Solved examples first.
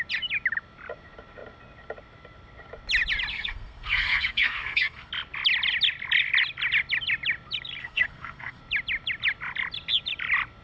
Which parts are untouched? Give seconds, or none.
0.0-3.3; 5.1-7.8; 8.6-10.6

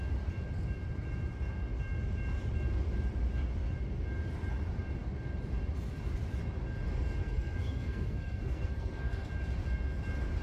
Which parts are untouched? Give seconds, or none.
0.0-7.2; 9.3-10.4

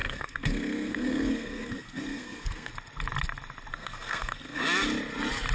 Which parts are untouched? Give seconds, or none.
2.7-3.7; 4.6-5.5

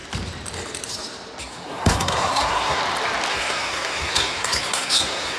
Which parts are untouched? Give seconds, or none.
0.0-1.4; 2.8-3.3

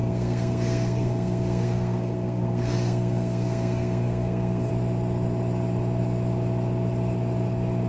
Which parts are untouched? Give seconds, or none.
4.7-7.9

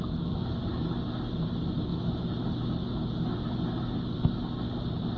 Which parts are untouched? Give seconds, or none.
0.0-5.2